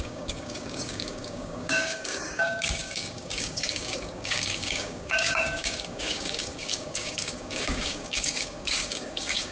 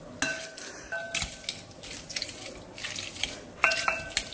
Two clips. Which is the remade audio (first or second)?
first